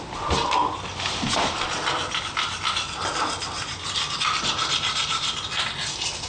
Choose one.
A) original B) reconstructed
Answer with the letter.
A